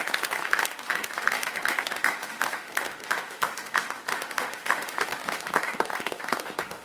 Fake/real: fake